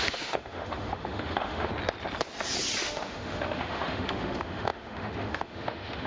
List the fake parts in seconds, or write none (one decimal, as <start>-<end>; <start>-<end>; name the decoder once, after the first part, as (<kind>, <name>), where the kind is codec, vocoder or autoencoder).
0.0-1.7 (autoencoder, DAC-VAE); 2.8-6.1